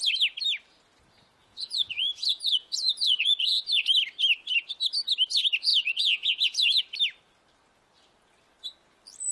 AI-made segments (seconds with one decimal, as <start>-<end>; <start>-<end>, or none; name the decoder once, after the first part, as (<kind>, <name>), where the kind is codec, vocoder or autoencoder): 1.4-3.9 (vocoder, Vocos); 5.7-6.8